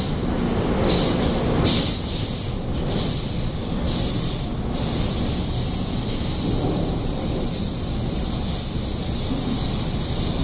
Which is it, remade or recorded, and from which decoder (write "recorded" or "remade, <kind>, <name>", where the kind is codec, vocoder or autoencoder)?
recorded